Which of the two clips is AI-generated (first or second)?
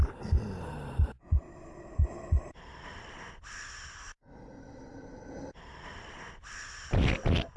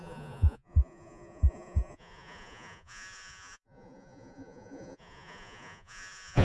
second